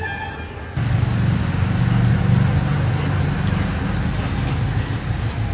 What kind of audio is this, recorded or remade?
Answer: recorded